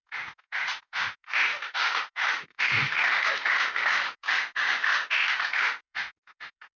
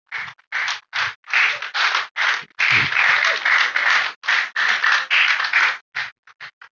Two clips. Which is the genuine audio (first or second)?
second